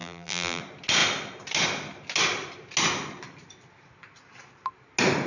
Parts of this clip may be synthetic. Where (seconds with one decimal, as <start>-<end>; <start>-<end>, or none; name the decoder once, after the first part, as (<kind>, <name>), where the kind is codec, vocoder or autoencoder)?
0.0-0.6 (vocoder, BigVGAN v2)

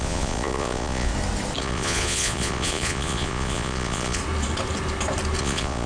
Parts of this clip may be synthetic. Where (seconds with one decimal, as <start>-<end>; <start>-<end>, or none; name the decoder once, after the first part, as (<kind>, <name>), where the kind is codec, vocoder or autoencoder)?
0.0-1.1 (vocoder, Vocos); 1.6-4.2; 5.4-5.9

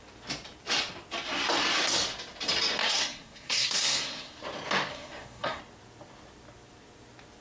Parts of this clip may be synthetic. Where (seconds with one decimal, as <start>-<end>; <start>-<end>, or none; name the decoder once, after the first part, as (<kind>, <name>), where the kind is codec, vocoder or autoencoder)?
2.8-4.4 (codec, SNAC); 4.9-5.6